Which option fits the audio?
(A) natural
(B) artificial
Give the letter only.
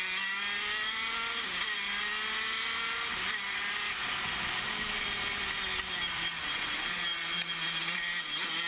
A